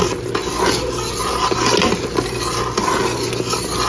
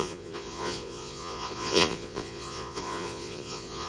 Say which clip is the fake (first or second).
second